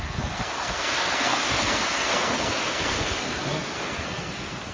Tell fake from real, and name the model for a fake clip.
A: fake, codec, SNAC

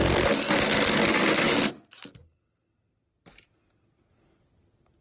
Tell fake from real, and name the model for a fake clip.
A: real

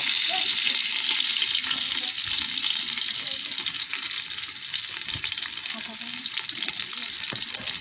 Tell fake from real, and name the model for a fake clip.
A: real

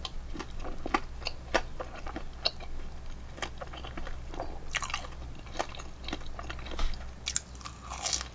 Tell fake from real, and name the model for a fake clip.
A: real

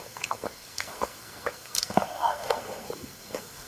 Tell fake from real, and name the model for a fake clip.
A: fake, codec, SNAC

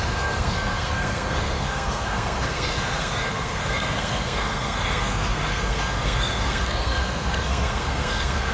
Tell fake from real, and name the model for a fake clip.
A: fake, codec, SNAC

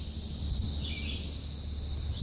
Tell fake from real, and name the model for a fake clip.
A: real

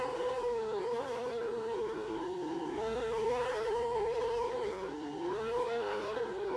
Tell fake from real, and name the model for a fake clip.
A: fake, codec, SNAC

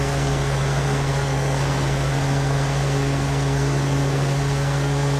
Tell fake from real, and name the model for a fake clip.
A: fake, codec, SNAC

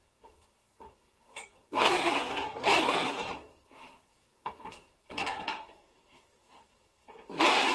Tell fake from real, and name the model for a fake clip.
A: fake, codec, SNAC